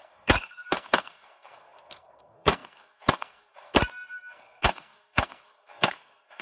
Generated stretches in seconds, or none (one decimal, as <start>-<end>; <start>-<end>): 0.0-6.4

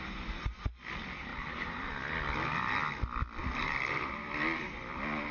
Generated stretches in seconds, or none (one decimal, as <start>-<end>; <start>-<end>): 1.3-1.9; 3.4-4.1

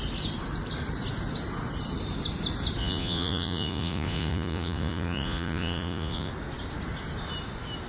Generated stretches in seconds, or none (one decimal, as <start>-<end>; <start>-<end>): 2.8-6.3

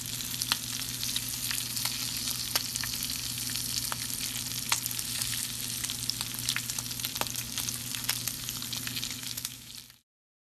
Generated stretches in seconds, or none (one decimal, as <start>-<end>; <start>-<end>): 9.2-9.7

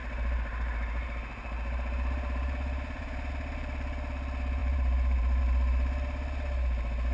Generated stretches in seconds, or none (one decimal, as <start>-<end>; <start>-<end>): 0.0-3.3; 4.6-5.4

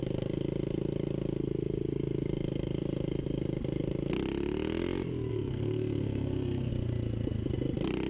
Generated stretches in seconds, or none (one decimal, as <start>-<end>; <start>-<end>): 5.3-6.7

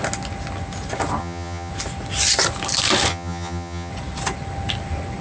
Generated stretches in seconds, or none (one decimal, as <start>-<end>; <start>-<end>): 1.2-1.7; 3.1-3.9

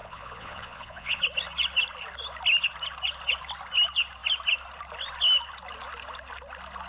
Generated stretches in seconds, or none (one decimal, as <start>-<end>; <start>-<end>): 0.0-1.2